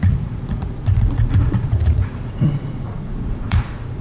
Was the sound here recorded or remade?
remade